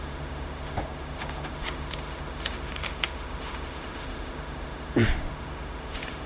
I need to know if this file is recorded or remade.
remade